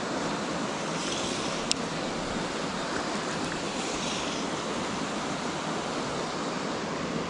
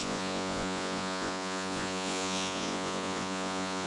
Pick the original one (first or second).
first